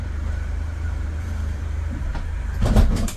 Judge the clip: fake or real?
fake